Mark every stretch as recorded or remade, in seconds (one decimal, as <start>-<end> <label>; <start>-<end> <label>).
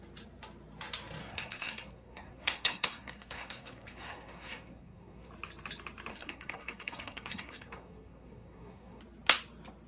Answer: 0.0-1.2 recorded; 1.2-5.3 remade; 5.3-6.1 recorded; 6.1-9.0 remade; 9.0-9.9 recorded